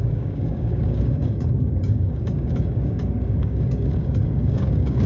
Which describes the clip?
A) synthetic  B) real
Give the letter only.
A